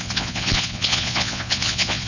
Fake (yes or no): yes